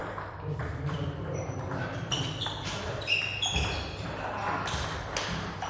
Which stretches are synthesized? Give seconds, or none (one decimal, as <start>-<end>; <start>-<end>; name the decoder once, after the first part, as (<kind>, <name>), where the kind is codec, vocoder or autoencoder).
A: 0.0-3.2 (vocoder, BigVGAN v2)